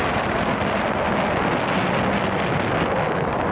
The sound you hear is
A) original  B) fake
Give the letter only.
A